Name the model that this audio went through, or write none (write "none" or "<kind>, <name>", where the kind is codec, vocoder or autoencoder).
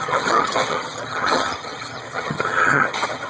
vocoder, HiFi-GAN